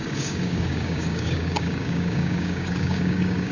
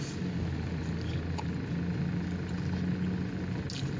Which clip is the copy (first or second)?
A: first